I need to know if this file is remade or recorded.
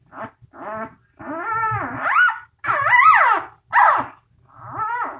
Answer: recorded